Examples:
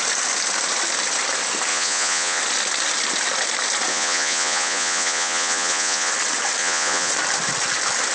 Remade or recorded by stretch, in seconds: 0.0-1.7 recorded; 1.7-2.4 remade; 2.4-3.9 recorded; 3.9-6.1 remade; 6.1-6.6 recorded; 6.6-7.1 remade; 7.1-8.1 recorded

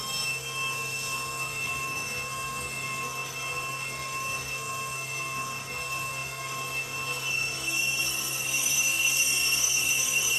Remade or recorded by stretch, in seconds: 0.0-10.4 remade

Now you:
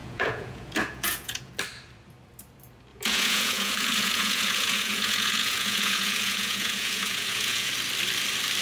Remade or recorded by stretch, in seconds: 0.0-1.5 remade; 1.5-2.9 recorded; 2.9-7.7 remade; 7.7-8.6 recorded

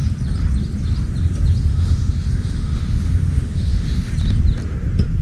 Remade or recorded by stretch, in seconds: 0.0-1.7 recorded; 1.7-4.1 remade; 4.1-5.2 recorded